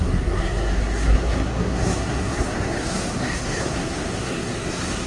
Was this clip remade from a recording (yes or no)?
yes